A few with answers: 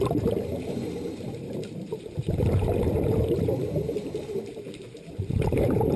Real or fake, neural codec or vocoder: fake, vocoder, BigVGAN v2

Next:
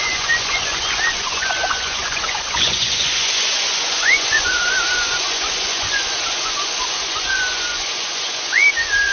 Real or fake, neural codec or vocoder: fake, vocoder, Vocos